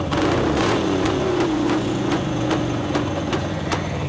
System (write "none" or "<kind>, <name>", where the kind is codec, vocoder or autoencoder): vocoder, Vocos